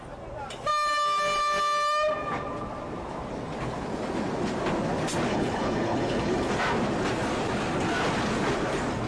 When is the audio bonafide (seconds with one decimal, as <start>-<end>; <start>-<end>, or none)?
0.0-5.3; 6.5-9.1